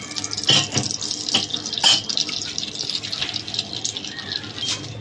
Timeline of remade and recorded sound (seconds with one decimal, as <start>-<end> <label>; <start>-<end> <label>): 0.0-5.0 recorded